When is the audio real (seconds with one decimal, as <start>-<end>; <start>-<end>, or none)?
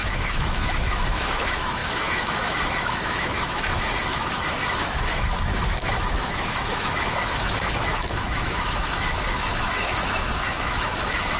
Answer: none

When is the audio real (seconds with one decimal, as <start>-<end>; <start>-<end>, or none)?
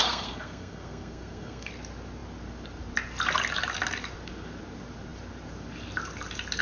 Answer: 1.7-6.6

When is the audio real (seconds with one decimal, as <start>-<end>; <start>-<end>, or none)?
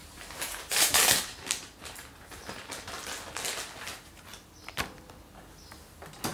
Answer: 2.4-6.3